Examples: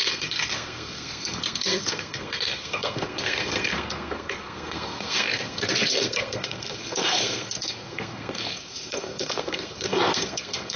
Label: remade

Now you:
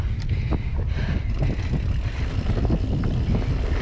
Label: recorded